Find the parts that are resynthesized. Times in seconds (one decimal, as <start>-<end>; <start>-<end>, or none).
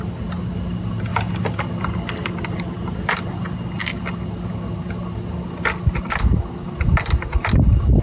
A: none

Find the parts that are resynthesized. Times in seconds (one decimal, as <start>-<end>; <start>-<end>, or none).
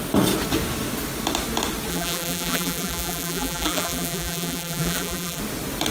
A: 1.9-5.4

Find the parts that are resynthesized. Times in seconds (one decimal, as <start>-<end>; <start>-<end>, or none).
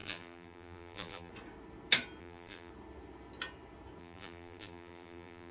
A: 0.0-1.3; 2.2-2.7; 4.0-5.5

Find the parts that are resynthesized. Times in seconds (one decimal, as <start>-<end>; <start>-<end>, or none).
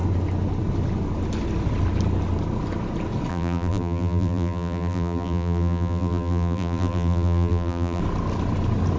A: 3.3-8.0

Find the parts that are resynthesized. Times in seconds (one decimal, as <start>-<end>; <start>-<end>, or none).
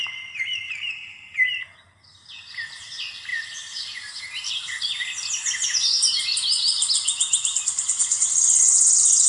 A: 0.0-1.5; 3.3-4.2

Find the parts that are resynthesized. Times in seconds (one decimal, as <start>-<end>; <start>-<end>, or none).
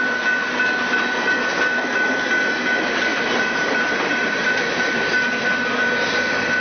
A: 3.1-5.3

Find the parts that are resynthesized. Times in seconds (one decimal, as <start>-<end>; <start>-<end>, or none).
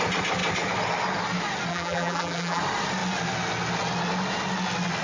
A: 1.7-2.6